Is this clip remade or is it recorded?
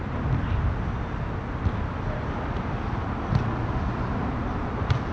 recorded